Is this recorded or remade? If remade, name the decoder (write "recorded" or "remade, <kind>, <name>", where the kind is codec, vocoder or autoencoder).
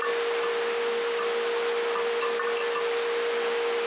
recorded